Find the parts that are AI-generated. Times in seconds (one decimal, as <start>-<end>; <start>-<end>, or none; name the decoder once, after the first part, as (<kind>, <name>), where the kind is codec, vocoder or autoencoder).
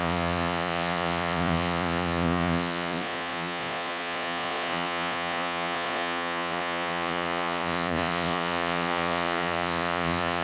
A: 0.0-10.4 (vocoder, Vocos)